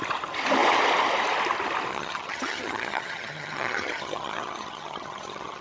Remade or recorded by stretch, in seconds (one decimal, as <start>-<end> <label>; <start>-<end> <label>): 0.0-1.9 recorded; 1.9-5.6 remade